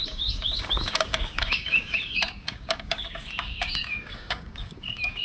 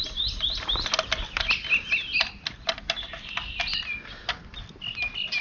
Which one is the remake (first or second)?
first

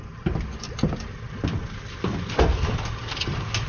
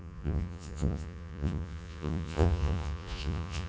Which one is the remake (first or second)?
second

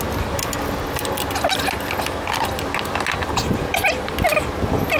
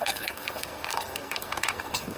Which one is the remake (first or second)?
second